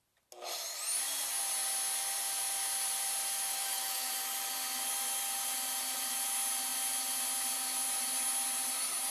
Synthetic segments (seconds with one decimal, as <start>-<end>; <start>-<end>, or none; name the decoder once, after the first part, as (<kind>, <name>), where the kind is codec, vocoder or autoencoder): 3.5-4.1 (autoencoder, DAC-VAE)